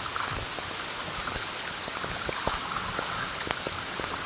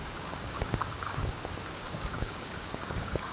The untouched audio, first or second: first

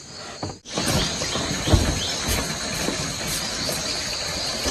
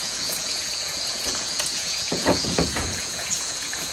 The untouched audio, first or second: first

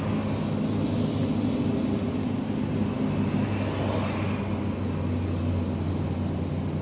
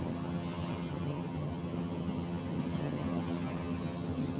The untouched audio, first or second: first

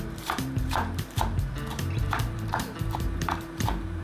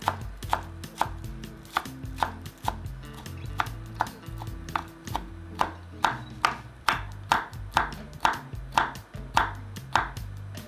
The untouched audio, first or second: second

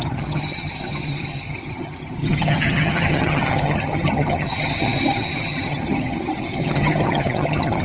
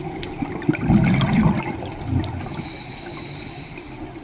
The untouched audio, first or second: second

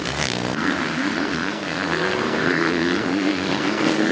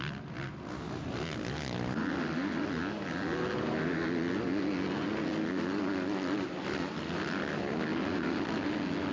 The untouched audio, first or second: second